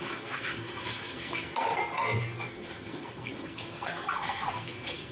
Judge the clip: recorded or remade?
remade